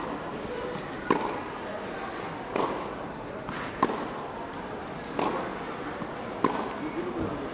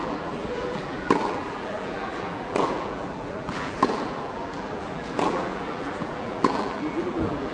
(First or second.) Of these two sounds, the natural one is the first